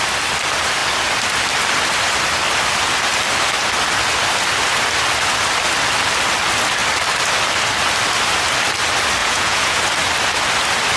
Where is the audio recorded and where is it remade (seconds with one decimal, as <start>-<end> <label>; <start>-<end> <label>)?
0.0-9.2 recorded; 9.2-9.8 remade; 9.8-11.0 recorded